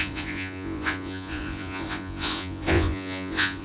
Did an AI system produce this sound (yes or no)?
yes